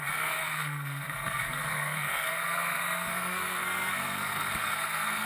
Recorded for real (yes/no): no